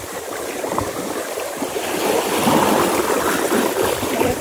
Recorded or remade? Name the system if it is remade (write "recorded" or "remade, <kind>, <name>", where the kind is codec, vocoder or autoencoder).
remade, vocoder, BigVGAN v2